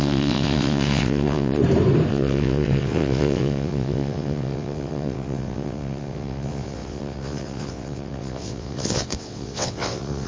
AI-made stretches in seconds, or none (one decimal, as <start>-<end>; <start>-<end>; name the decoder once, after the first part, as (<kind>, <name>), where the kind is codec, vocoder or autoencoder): 0.0-1.6 (vocoder, WaveNeXt); 2.1-10.3

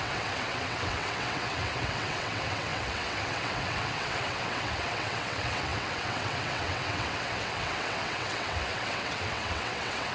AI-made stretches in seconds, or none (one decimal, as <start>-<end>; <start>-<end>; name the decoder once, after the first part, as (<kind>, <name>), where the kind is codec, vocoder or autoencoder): 0.0-10.1 (vocoder, WaveNeXt)

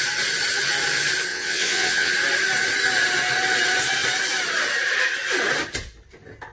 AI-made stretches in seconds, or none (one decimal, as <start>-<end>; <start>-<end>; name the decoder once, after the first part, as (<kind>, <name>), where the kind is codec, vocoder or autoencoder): 1.3-2.1 (vocoder, WaveNeXt)

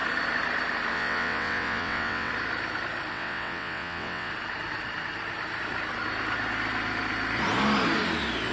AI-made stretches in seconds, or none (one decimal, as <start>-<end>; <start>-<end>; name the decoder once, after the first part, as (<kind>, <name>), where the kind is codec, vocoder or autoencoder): 0.9-2.3 (vocoder, WaveNeXt); 3.1-4.3

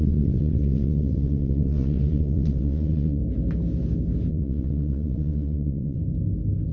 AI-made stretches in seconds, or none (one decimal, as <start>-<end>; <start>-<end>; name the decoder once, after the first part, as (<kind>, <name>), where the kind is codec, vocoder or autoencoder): 0.0-3.2 (vocoder, WaveNeXt); 4.3-6.0

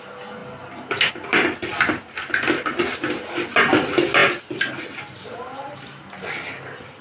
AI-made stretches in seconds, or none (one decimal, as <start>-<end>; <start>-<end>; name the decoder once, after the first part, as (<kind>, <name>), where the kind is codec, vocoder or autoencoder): none

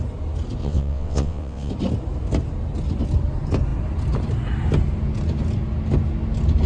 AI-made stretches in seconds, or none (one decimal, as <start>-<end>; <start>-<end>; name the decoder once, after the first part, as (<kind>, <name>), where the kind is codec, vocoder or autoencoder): 0.6-1.7 (vocoder, WaveNeXt)